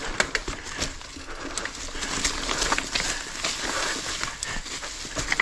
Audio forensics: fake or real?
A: real